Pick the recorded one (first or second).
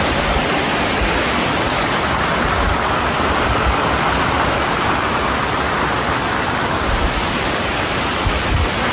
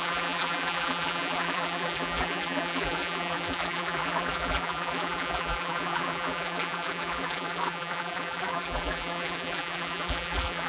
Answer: first